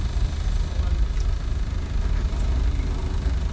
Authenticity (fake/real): real